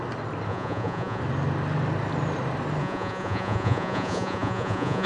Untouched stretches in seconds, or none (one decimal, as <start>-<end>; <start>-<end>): 0.0-0.5; 1.2-2.8